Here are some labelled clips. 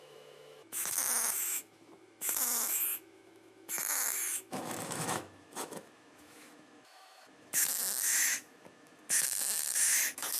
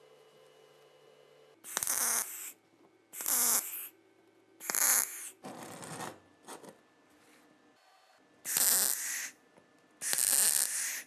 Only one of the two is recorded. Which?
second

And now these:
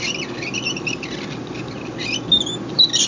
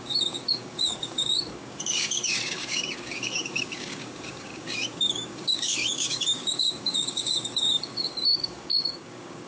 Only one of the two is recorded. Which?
first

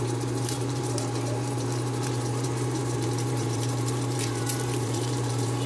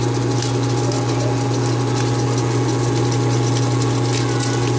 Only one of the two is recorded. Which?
second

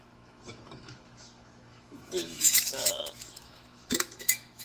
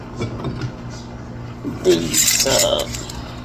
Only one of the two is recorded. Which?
second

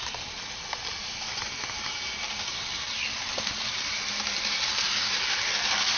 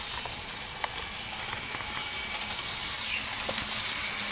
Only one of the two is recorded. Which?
second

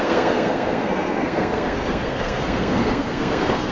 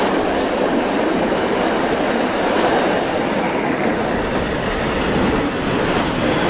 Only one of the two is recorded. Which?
second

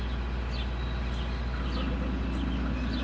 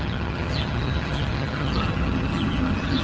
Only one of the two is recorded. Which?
first